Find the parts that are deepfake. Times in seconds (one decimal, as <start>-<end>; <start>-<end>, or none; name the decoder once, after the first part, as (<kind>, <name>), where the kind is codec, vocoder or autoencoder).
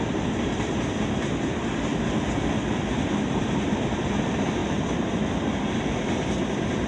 none